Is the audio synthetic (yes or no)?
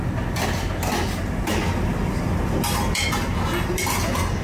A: no